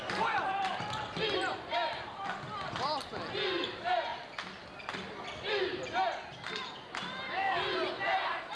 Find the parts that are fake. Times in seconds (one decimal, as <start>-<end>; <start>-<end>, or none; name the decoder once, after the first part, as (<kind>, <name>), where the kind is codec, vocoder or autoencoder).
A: none